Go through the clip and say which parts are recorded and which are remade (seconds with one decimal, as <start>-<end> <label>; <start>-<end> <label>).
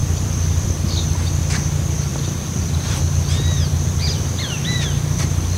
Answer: 0.0-0.7 remade; 0.7-2.1 recorded; 2.1-5.6 remade